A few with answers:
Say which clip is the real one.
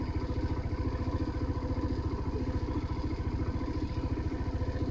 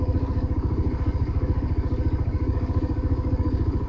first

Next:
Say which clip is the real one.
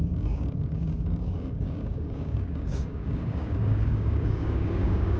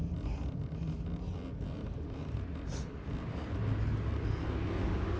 second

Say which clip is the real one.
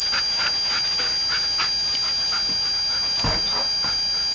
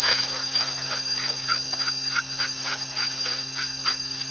first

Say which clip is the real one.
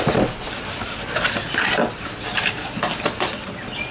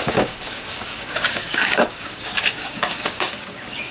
first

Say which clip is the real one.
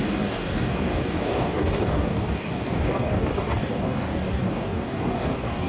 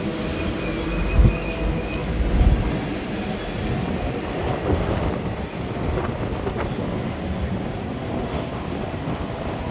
second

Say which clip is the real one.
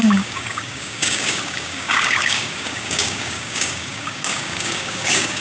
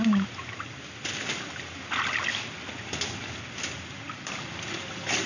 second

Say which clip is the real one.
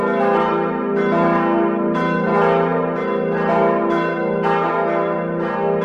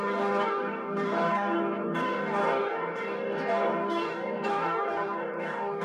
first